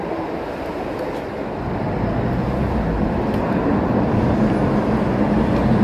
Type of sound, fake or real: real